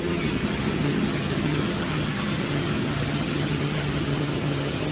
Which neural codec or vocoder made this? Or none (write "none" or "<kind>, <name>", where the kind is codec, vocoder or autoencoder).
vocoder, HiFi-GAN